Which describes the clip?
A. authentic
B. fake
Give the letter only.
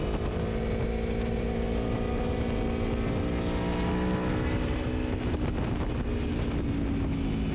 A